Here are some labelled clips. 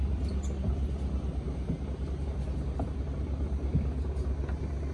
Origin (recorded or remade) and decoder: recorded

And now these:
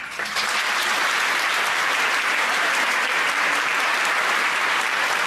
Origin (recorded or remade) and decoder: remade, vocoder, BigVGAN v2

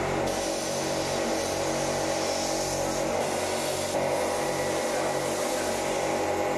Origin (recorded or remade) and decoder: recorded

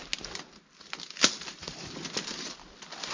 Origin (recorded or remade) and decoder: recorded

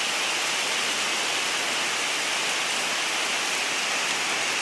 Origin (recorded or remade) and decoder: recorded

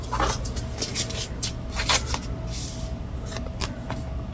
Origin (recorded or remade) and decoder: recorded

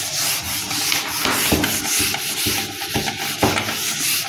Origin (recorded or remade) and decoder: recorded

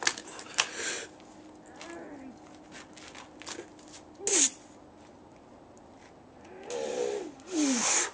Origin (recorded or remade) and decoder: recorded